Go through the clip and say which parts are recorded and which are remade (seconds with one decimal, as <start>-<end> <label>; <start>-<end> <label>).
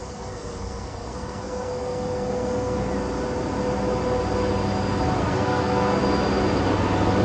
0.0-2.9 remade; 2.9-5.2 recorded; 5.2-6.0 remade; 6.0-7.2 recorded